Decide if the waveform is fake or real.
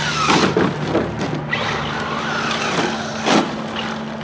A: real